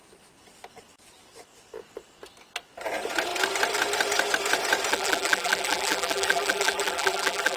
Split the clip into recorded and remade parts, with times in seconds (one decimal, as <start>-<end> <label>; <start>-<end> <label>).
0.0-4.9 recorded; 4.9-7.6 remade